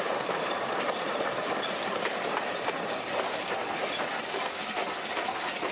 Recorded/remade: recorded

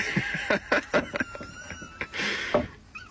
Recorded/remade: recorded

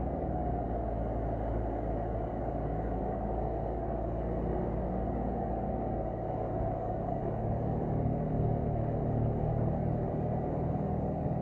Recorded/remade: remade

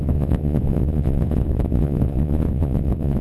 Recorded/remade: remade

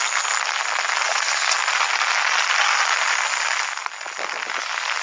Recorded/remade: recorded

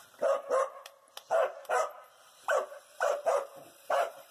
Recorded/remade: remade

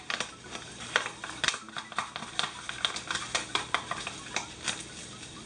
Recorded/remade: recorded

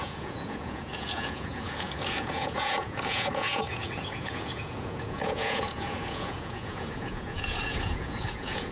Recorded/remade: remade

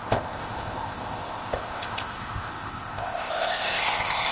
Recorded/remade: remade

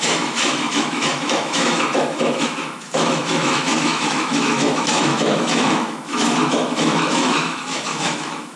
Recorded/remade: remade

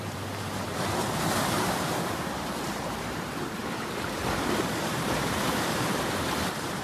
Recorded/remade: remade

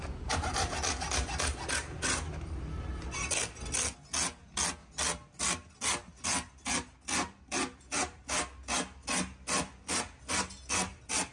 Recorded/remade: recorded